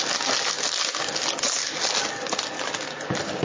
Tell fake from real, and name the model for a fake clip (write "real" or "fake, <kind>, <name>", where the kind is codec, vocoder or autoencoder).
real